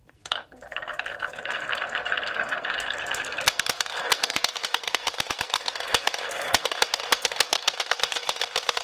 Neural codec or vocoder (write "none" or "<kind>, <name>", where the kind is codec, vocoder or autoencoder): codec, SNAC